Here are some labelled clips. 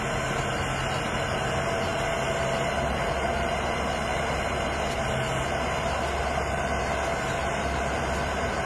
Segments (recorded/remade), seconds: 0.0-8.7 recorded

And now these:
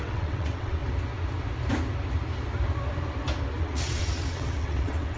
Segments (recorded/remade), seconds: 0.0-0.8 remade; 0.8-3.6 recorded; 3.6-5.2 remade

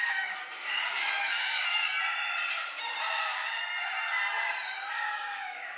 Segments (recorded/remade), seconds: 0.0-1.8 remade; 1.8-3.2 recorded; 3.2-3.6 remade; 3.6-4.9 recorded; 4.9-5.8 remade